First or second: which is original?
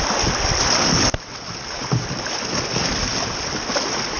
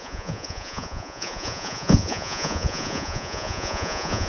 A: first